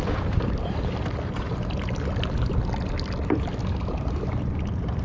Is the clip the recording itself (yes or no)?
yes